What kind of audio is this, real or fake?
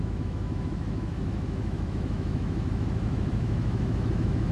fake